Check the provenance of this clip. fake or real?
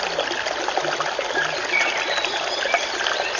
real